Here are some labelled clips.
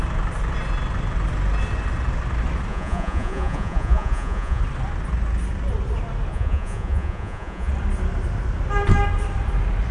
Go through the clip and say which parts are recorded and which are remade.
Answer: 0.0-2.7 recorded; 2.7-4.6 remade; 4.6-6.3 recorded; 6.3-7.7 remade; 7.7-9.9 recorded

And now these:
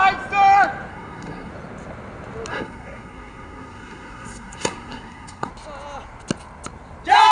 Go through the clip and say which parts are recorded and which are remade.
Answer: 0.0-0.9 recorded; 0.9-1.5 remade; 1.5-2.5 recorded; 2.5-5.5 remade; 5.5-7.3 recorded

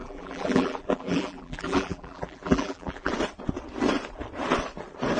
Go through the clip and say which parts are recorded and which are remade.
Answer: 0.0-3.1 remade; 3.1-5.2 recorded